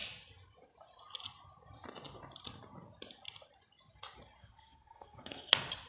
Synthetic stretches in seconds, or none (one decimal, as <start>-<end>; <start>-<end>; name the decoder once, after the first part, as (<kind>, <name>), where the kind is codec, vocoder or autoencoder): 4.4-5.5 (codec, SNAC)